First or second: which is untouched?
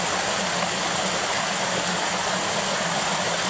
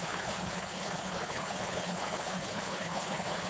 first